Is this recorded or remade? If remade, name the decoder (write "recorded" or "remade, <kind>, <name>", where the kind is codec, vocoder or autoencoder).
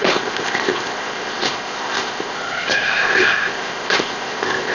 remade, codec, ZipCodec